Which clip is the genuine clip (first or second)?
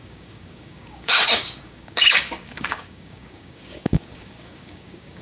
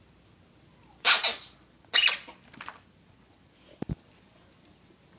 second